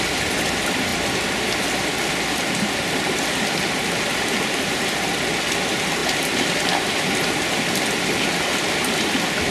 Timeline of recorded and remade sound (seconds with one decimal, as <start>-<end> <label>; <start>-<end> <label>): 0.0-4.1 recorded; 4.1-4.8 remade; 4.8-6.0 recorded; 6.0-7.5 remade; 7.5-9.5 recorded